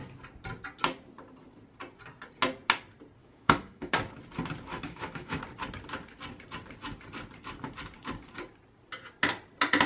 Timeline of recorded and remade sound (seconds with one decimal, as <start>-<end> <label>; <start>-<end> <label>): 0.0-3.2 recorded; 3.2-3.9 remade; 3.9-4.7 recorded; 4.7-5.4 remade; 5.4-9.9 recorded